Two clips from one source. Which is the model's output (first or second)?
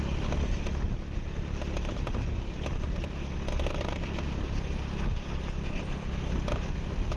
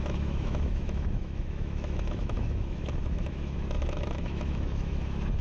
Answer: second